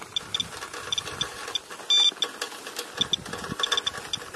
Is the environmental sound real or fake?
real